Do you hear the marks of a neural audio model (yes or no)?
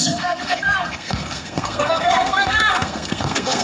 yes